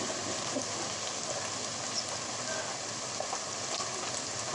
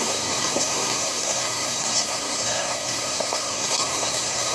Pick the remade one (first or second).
second